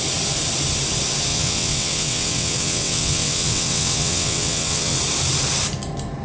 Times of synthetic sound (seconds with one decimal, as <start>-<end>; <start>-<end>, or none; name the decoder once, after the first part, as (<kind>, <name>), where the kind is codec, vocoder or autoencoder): 1.3-5.0 (vocoder, WaveNeXt)